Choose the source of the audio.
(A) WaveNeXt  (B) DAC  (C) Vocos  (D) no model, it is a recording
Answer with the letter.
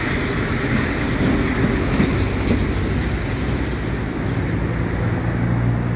D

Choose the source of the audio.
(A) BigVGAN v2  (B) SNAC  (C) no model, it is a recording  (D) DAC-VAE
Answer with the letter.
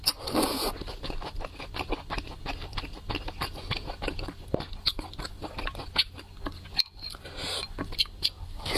C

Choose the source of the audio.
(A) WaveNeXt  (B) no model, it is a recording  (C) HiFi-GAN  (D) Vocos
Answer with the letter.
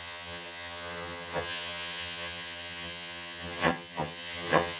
C